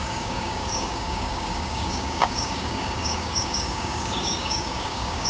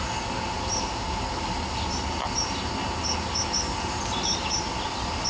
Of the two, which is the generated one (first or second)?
first